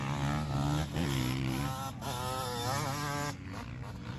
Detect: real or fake real